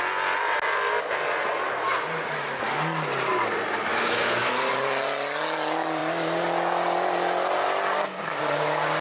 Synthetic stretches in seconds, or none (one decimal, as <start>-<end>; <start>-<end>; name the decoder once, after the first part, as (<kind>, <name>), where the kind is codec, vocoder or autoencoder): 3.9-4.5 (autoencoder, DAC-VAE)